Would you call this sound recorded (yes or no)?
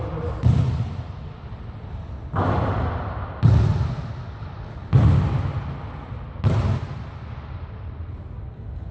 yes